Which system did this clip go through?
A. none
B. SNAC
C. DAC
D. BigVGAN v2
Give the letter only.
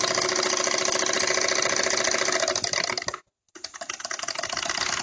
A